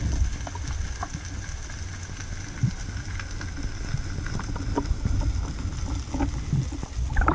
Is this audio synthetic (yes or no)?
no